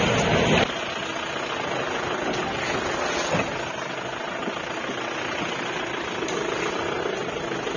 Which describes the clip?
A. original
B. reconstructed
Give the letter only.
A